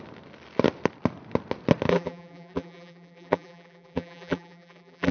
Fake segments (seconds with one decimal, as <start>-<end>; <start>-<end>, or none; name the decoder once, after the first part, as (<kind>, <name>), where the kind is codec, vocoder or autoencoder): 1.9-5.1 (vocoder, BigVGAN v2)